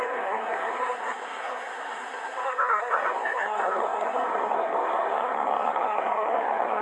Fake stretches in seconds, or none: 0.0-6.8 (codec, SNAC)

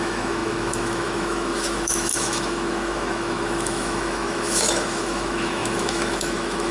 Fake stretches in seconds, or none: 0.0-6.7 (autoencoder, DAC-VAE)

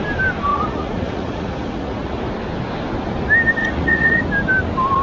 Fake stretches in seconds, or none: 0.5-2.2 (vocoder, Vocos); 3.6-4.2

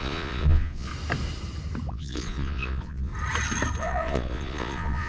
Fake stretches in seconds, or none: 0.0-0.9 (vocoder, Vocos); 1.9-3.1; 3.8-5.1

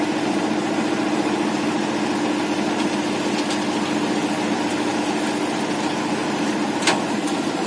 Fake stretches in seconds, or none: none

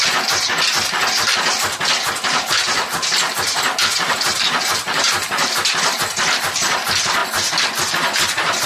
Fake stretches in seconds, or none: none

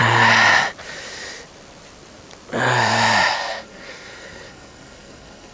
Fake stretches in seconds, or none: 3.3-5.5 (codec, SNAC)